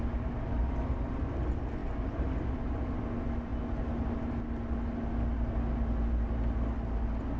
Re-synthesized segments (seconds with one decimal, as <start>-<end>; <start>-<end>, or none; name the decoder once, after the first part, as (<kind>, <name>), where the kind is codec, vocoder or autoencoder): none